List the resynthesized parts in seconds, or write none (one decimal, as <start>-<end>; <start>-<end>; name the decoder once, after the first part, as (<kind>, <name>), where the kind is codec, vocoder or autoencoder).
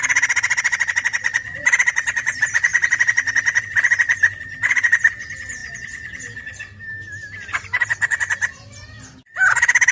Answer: none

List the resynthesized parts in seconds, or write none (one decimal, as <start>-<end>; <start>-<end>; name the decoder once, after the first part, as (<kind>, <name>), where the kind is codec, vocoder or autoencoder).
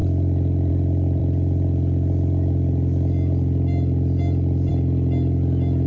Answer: none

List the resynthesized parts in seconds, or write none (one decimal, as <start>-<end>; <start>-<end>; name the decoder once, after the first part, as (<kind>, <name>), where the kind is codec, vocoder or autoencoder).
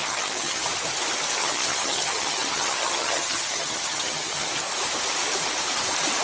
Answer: 0.0-0.6 (vocoder, HiFi-GAN); 1.4-4.5